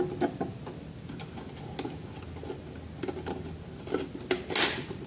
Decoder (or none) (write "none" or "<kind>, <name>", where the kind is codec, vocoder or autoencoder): none